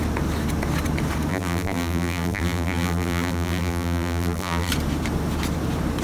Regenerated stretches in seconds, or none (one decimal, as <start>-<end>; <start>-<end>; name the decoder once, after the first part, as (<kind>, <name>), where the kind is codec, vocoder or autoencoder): 1.3-4.7 (vocoder, BigVGAN v2)